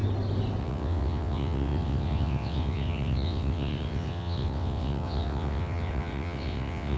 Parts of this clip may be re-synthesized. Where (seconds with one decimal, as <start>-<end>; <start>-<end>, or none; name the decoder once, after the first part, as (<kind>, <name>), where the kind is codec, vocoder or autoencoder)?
0.6-7.0 (vocoder, WaveNeXt)